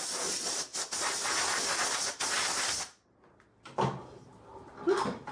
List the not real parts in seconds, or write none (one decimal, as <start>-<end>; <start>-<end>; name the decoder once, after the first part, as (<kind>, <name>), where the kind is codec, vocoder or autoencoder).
none